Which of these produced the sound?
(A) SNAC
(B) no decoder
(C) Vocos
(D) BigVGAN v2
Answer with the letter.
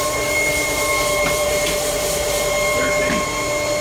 D